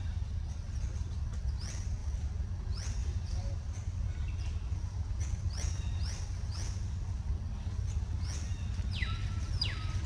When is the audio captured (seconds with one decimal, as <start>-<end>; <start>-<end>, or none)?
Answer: 0.0-2.0; 2.6-3.0; 6.2-10.1